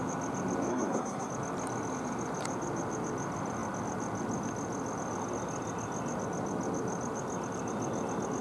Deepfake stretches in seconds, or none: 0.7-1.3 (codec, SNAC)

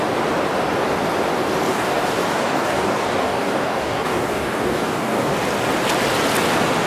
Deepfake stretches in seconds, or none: 1.7-5.3 (codec, DAC)

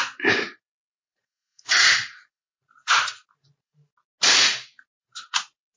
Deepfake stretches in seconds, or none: 0.0-3.9 (vocoder, BigVGAN v2); 5.0-5.8

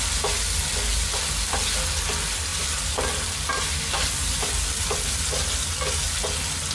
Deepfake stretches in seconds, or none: none

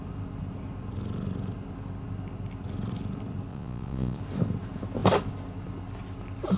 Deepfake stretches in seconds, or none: 3.5-4.2 (vocoder, Vocos)